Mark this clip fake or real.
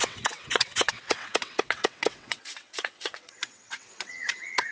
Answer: fake